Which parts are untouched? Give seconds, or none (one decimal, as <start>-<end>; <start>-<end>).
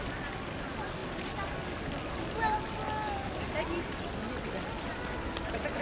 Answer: 0.0-5.8